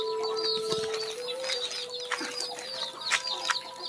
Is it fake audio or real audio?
real